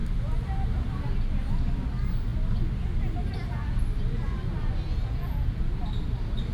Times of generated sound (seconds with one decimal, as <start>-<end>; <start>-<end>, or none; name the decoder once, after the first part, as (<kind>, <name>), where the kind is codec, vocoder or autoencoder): 5.0-5.8 (vocoder, Vocos)